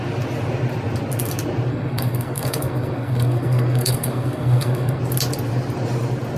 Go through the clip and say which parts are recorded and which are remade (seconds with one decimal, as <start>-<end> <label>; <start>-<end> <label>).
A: 0.0-1.7 recorded; 1.7-5.0 remade; 5.0-6.4 recorded